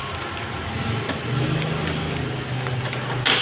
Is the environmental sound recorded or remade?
recorded